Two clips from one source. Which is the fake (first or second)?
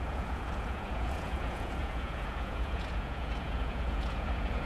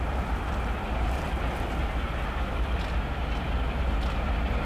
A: first